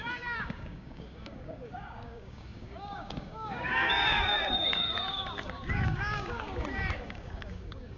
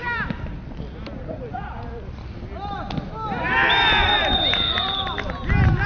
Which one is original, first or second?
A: second